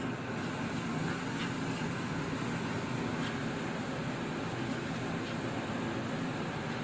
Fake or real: real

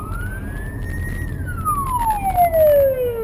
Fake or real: real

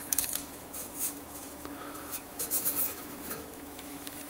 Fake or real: fake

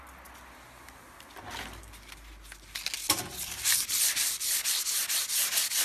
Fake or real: real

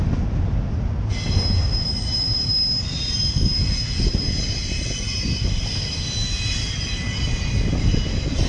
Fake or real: real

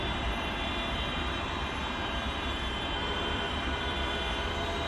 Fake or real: fake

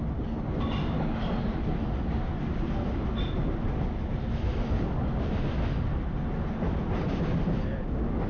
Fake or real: real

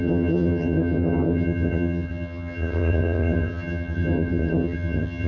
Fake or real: fake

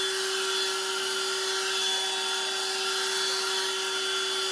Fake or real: real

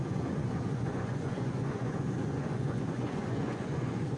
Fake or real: fake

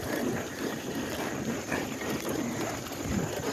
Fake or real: real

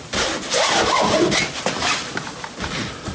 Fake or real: real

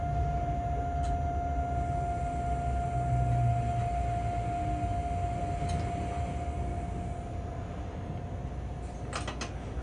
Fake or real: real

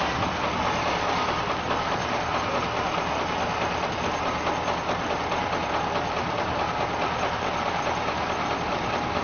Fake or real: real